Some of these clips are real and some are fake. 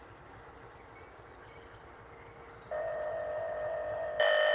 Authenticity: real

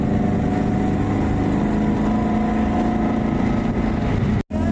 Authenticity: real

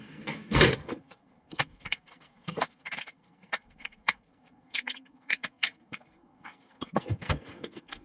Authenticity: fake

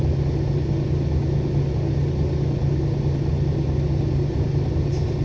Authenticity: real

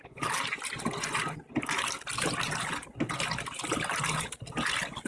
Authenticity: real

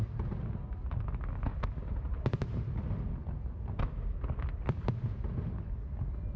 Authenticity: real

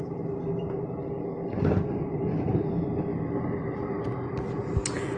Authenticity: real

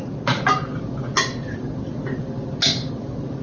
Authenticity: real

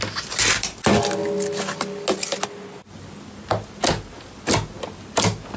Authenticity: real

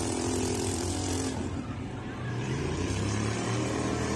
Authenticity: fake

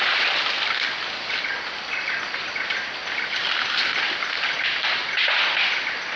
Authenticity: real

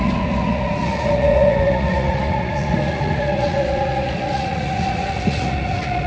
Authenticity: fake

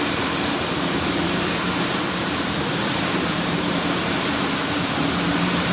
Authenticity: fake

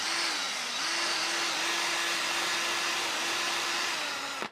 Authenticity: real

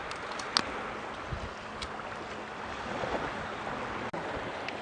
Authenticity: real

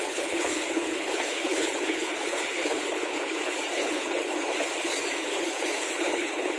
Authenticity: fake